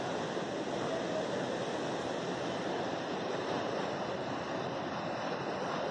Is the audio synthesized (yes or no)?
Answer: no